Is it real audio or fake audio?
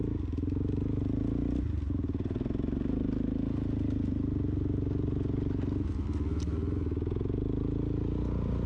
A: real